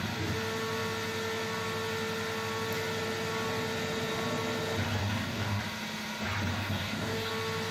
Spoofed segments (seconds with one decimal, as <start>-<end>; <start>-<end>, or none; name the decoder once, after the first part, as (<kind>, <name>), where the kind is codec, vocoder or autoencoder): 5.0-5.6 (codec, DAC); 6.5-7.3